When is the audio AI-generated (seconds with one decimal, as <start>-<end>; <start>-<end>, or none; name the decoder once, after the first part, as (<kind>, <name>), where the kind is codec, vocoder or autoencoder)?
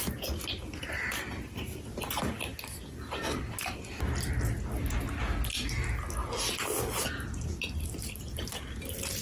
none